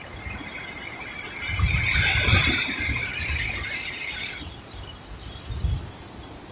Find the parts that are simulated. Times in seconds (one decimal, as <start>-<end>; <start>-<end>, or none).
2.4-5.5